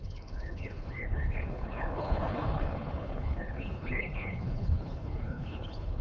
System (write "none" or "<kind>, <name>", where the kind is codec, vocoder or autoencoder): codec, HILCodec